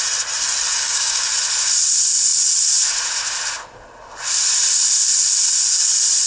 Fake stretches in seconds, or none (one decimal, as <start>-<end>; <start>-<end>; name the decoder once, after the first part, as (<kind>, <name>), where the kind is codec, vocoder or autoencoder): 0.7-1.3 (codec, DAC)